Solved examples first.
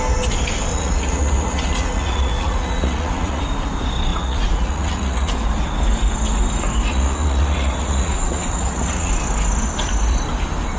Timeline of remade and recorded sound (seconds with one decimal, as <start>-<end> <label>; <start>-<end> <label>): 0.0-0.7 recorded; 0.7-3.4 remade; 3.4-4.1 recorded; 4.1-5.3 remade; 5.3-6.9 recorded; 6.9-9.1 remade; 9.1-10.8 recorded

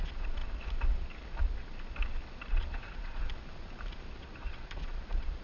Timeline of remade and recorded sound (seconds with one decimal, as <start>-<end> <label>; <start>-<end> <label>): 0.0-0.4 remade; 0.4-2.5 recorded; 2.5-3.2 remade; 3.2-4.2 recorded; 4.2-5.4 remade

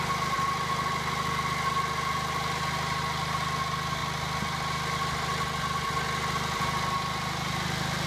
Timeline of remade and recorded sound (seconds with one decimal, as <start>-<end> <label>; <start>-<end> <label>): 0.0-8.1 recorded